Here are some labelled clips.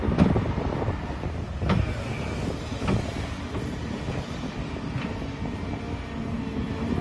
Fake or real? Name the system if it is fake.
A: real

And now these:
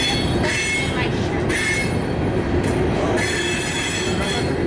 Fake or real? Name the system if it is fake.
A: real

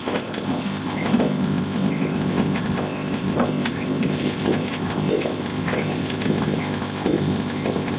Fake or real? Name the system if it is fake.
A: fake, codec, ZipCodec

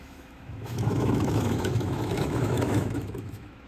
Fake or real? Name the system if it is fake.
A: fake, autoencoder, DAC-VAE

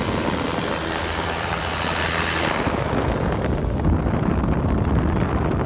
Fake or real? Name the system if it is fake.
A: real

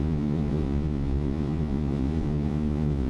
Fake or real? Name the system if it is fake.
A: fake, vocoder, Vocos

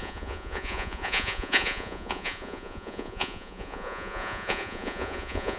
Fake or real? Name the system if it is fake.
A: fake, vocoder, Vocos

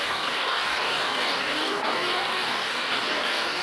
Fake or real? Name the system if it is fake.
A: fake, codec, DAC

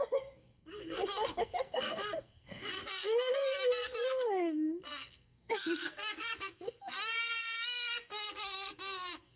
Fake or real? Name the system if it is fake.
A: fake, codec, SNAC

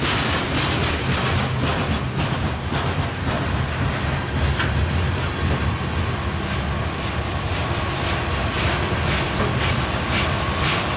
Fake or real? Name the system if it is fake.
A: real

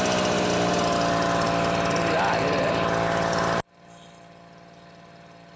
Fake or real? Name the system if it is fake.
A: real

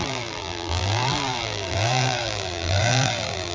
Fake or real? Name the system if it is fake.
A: fake, vocoder, BigVGAN v2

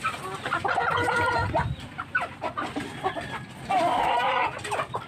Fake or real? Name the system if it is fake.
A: fake, vocoder, BigVGAN v2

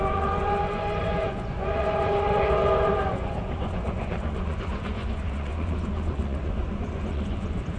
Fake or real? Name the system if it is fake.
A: fake, vocoder, Vocos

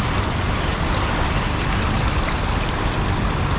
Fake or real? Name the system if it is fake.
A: real